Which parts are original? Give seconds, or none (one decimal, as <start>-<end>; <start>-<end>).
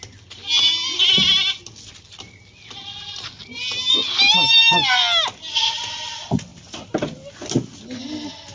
0.0-8.5